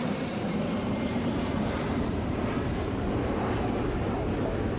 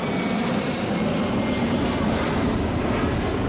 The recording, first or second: second